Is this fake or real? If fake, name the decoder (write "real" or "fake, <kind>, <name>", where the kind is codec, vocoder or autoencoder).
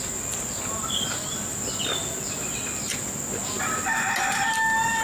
real